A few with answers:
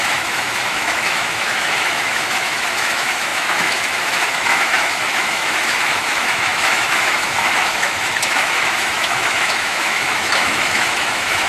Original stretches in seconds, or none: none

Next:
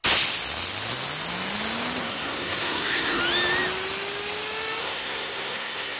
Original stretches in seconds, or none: 0.0-2.0; 3.2-4.8

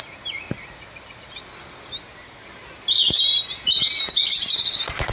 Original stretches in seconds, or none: 0.0-3.0; 3.8-5.1

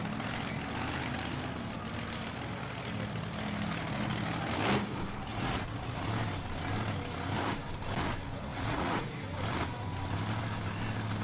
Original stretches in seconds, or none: 0.0-5.3; 6.1-8.5; 9.1-11.2

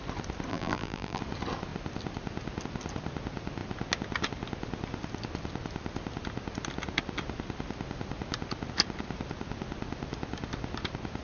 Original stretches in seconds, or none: 0.0-0.5; 1.2-11.2

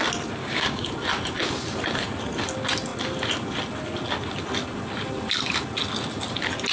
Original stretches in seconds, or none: 0.0-0.4; 0.9-6.7

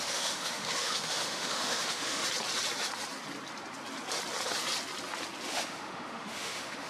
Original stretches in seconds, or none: 2.2-5.5

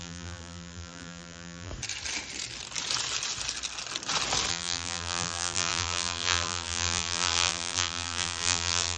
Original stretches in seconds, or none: 1.7-4.5